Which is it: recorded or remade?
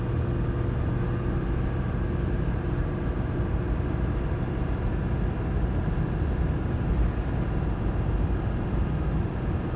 recorded